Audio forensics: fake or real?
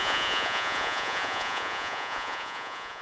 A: fake